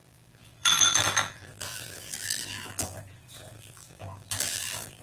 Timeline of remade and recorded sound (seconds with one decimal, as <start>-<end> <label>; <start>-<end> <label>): 0.0-3.0 remade; 3.0-3.5 recorded; 3.5-5.0 remade